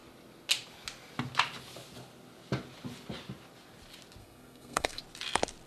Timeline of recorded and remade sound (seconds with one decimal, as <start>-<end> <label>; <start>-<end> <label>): 0.0-4.2 recorded; 4.2-5.0 remade; 5.0-5.7 recorded